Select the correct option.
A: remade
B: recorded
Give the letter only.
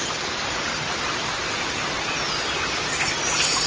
B